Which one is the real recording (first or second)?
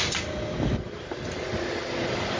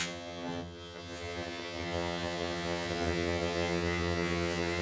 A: first